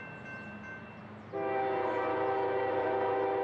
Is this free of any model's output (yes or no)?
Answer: yes